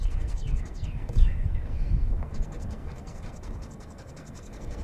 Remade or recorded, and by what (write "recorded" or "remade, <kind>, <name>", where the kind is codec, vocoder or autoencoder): remade, codec, SNAC